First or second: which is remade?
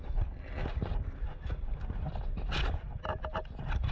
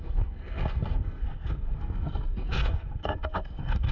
second